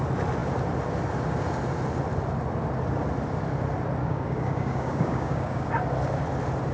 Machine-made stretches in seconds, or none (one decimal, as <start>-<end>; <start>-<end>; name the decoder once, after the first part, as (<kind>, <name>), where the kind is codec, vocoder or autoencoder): 4.0-5.7 (codec, DAC)